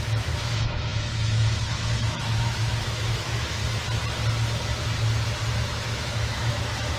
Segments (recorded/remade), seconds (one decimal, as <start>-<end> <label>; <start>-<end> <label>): 0.0-3.6 remade; 3.6-5.5 recorded; 5.5-7.0 remade